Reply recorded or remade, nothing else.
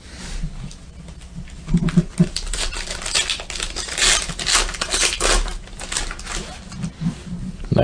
recorded